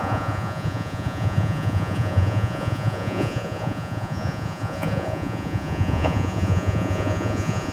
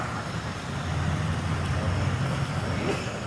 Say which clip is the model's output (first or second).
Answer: first